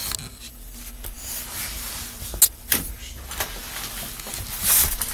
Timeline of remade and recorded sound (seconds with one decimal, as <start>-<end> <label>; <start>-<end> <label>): 0.0-5.1 recorded